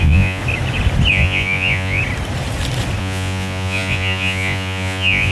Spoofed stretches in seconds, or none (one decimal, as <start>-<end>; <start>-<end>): 0.0-0.4; 1.1-2.0; 3.0-5.3